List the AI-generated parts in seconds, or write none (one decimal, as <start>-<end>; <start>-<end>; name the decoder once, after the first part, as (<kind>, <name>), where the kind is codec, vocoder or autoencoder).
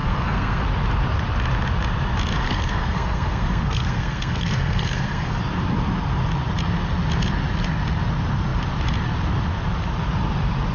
0.0-0.6 (codec, SNAC); 2.4-5.4